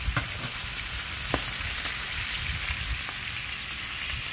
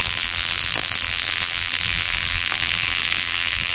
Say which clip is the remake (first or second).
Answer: second